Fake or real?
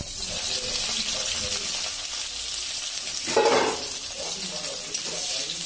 real